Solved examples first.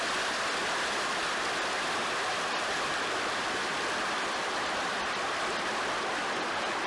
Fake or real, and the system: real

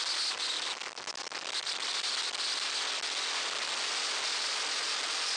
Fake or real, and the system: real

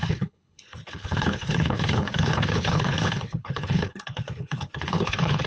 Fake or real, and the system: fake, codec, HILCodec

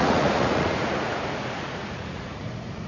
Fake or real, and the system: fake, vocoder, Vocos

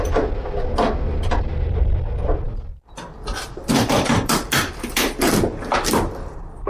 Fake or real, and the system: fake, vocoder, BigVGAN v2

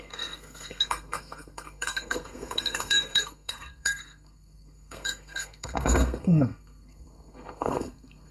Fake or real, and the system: fake, codec, SNAC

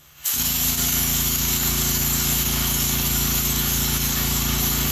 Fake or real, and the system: fake, codec, DAC